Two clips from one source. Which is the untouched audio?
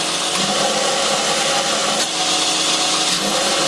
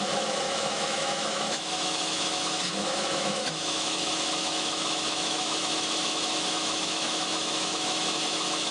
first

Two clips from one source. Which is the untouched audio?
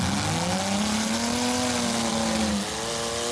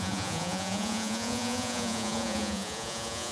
first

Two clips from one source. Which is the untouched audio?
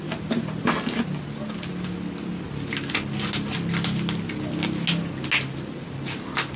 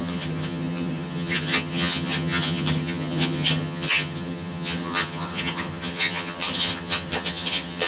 first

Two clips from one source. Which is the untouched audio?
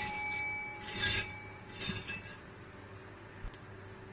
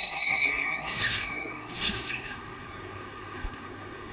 first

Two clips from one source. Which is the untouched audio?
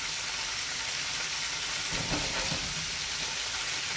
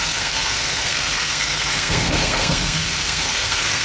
first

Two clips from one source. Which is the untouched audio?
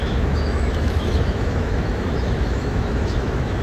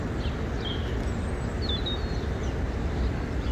second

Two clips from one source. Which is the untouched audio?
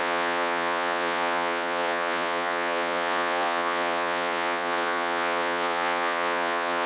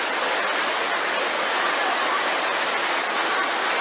second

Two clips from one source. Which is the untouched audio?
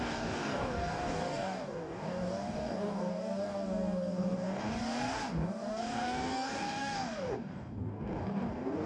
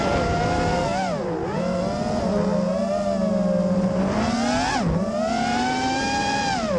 second